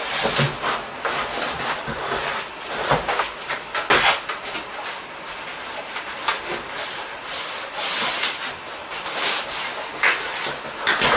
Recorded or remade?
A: recorded